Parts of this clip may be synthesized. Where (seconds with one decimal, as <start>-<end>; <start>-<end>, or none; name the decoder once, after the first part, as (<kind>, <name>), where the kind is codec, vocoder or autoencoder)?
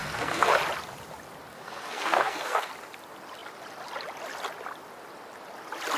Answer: 0.0-0.6 (codec, SNAC); 1.5-2.7